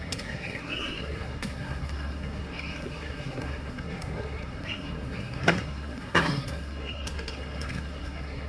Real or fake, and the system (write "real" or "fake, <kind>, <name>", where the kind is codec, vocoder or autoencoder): fake, codec, SNAC